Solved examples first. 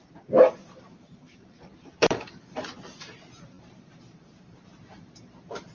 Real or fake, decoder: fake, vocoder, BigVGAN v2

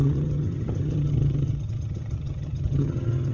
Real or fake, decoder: fake, vocoder, HiFi-GAN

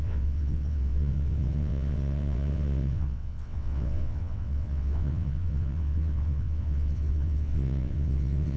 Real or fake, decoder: fake, vocoder, WaveNeXt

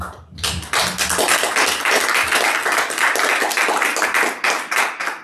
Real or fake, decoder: real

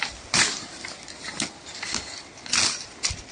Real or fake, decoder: real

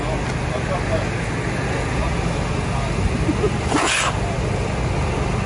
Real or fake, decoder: real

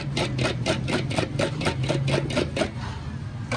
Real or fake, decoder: real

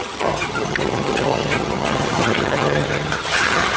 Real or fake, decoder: fake, vocoder, HiFi-GAN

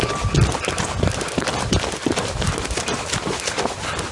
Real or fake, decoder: real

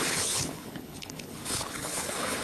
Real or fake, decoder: fake, codec, HILCodec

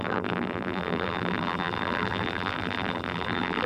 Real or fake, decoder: fake, vocoder, BigVGAN v2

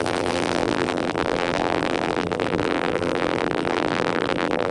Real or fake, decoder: fake, vocoder, BigVGAN v2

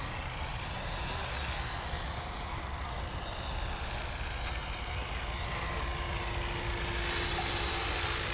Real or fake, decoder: real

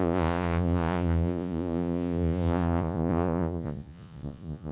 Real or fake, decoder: fake, vocoder, Vocos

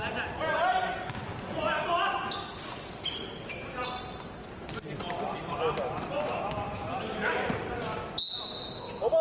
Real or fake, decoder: real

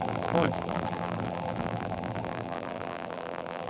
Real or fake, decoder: fake, vocoder, BigVGAN v2